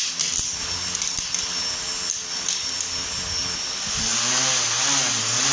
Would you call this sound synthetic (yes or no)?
no